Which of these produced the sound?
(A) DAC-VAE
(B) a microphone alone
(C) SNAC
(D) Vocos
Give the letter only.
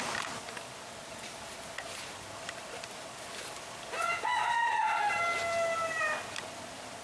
B